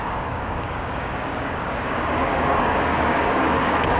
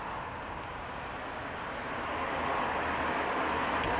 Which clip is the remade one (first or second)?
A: first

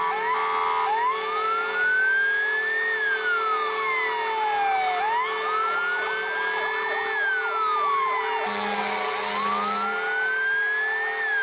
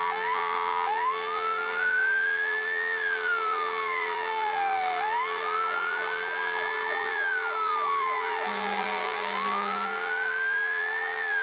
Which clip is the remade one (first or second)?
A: second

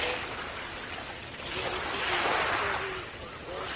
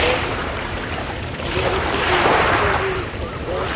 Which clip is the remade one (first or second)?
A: second